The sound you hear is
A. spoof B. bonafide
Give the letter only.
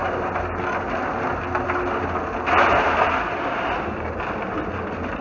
B